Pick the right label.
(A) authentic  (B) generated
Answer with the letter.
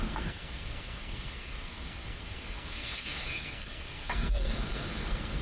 B